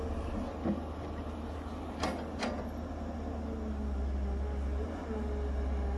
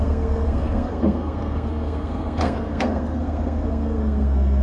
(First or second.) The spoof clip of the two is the second